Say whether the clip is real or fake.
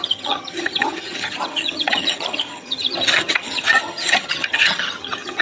fake